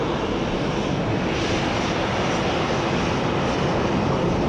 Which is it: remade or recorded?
recorded